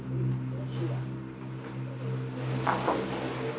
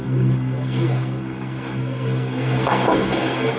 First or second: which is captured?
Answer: first